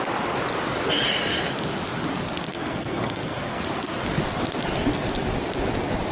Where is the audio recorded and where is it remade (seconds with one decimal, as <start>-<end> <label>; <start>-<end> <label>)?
0.0-2.5 recorded; 2.5-3.6 remade; 3.6-6.1 recorded